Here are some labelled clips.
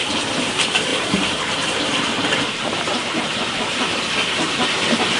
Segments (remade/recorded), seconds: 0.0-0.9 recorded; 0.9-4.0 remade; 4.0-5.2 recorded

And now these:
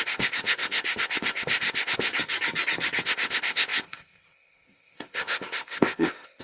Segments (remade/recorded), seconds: 0.0-2.1 remade; 2.1-3.0 recorded; 3.0-6.4 remade

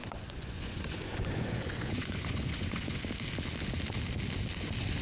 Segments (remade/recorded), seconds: 0.0-3.0 remade; 3.0-5.0 recorded

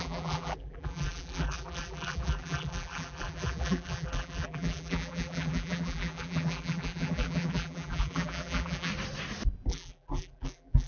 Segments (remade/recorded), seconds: 0.0-8.9 remade; 8.9-9.7 recorded; 9.7-10.9 remade

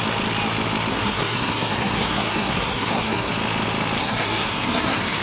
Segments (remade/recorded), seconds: 0.0-0.9 recorded; 0.9-3.3 remade; 3.3-4.0 recorded; 4.0-5.2 remade

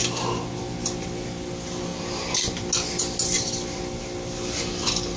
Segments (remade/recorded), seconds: 0.0-5.2 recorded

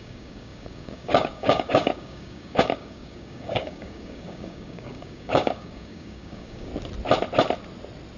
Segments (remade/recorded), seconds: 0.0-6.7 remade; 6.7-8.2 recorded